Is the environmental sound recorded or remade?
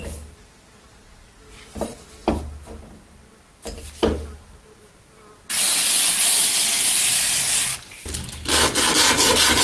recorded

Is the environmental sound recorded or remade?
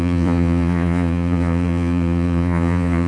remade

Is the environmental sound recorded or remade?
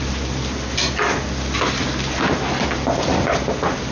recorded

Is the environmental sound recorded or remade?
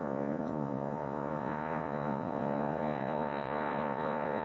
remade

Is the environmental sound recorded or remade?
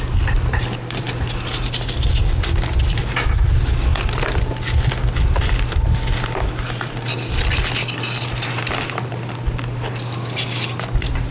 recorded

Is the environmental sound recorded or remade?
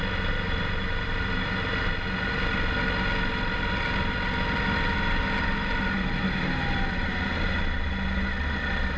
recorded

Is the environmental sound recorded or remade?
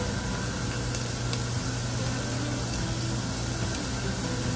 recorded